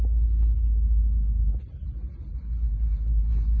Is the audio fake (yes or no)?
no